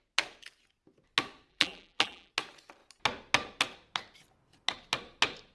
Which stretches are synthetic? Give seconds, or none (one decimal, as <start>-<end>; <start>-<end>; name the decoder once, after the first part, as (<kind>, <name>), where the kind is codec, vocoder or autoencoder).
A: 1.5-2.3 (vocoder, BigVGAN v2)